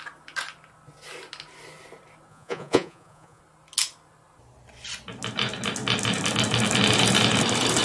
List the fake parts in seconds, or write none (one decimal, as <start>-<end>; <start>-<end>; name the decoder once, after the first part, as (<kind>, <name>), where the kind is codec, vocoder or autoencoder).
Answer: 2.3-3.4 (vocoder, Vocos)